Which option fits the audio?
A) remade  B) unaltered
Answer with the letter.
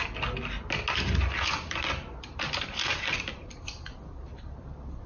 B